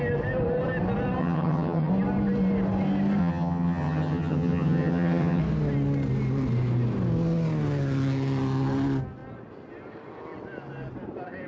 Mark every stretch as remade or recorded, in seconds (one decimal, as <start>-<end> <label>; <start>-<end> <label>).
0.0-1.2 recorded; 1.2-1.9 remade; 1.9-3.2 recorded; 3.2-5.4 remade; 5.4-11.5 recorded